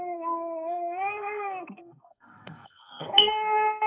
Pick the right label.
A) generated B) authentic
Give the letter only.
A